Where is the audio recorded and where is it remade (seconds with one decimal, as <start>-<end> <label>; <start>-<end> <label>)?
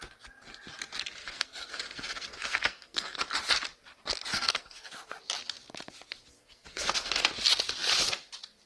0.0-1.2 recorded; 1.2-3.2 remade; 3.2-4.3 recorded; 4.3-4.9 remade; 4.9-6.4 recorded; 6.4-7.3 remade; 7.3-8.7 recorded